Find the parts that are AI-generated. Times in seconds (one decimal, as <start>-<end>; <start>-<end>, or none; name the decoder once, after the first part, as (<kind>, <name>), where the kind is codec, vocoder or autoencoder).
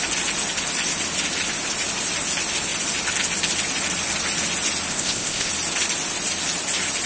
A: 4.9-5.5 (codec, ZipCodec)